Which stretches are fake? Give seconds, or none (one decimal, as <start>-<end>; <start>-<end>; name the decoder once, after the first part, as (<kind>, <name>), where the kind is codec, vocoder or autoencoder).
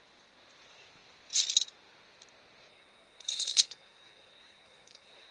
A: 2.7-5.3 (codec, SNAC)